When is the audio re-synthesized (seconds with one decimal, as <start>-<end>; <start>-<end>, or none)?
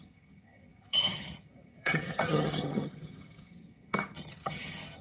0.0-5.0